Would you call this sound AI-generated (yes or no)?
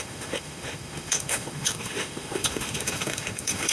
yes